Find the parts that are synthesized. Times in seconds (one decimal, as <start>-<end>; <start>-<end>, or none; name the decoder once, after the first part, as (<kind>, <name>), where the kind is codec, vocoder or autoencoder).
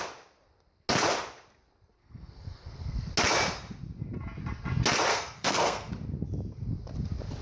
2.0-3.1 (codec, SNAC); 5.1-5.9